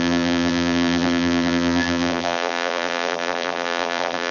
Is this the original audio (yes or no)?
no